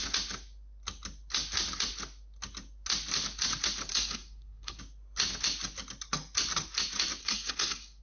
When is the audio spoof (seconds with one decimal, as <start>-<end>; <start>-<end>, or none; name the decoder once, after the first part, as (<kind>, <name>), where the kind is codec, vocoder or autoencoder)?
3.9-4.8 (codec, SNAC); 7.2-8.0